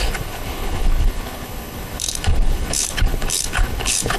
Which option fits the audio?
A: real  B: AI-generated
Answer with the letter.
B